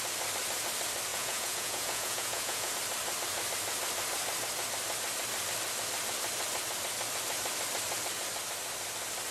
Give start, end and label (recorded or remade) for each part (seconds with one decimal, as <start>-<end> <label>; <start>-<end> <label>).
0.0-1.1 recorded; 1.1-2.7 remade; 2.7-9.3 recorded